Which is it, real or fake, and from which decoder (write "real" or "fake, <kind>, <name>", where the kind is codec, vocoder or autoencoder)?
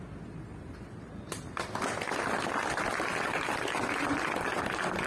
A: real